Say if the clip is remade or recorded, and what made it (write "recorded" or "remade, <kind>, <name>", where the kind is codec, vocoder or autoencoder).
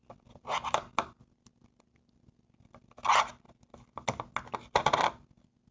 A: recorded